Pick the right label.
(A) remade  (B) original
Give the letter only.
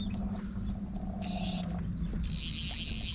B